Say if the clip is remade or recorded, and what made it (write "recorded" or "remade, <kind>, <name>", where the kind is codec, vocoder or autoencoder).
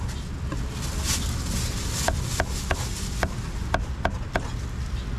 recorded